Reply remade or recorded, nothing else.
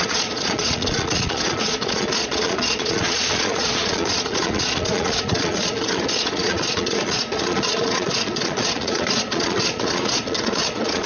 remade